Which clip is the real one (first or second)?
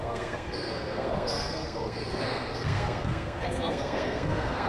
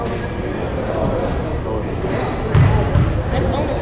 second